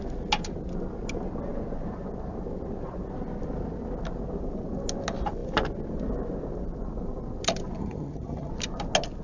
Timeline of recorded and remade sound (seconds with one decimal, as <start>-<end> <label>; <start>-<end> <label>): 0.0-7.8 recorded; 7.8-8.5 remade; 8.5-9.2 recorded